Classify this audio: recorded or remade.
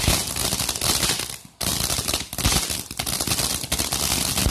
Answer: recorded